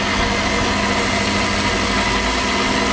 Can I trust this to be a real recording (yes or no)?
yes